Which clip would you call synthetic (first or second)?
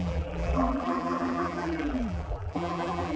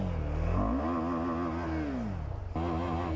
first